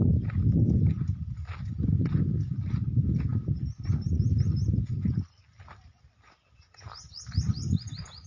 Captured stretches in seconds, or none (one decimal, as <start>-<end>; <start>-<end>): 0.0-8.3